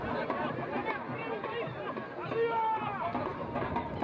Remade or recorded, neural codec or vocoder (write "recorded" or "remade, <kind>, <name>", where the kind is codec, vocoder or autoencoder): recorded